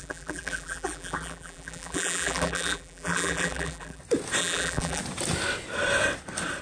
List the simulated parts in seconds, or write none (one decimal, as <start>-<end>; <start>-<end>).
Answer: 0.0-4.0; 4.4-5.0